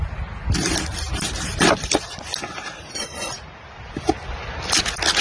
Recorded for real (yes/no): yes